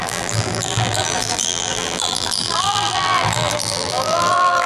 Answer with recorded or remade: remade